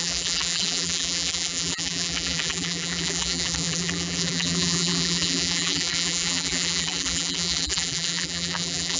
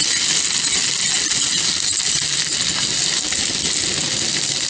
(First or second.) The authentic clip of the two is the second